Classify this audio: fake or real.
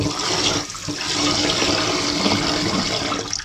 real